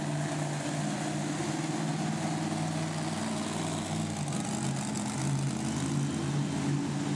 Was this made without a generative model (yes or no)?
yes